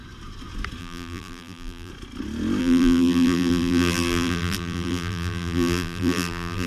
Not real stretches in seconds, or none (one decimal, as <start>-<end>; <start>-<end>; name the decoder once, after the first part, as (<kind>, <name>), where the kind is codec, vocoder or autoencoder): 0.8-1.9 (vocoder, BigVGAN v2); 2.6-6.7